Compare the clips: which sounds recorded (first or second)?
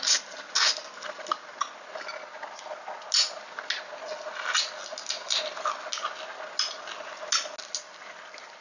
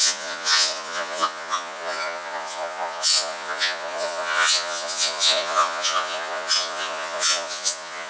first